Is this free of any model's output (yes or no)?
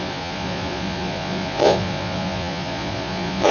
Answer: no